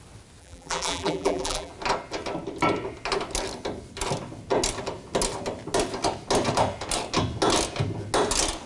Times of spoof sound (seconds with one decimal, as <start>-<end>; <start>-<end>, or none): 0.4-1.7